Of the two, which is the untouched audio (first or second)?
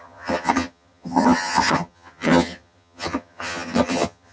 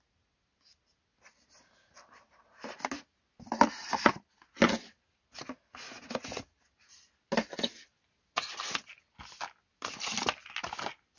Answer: second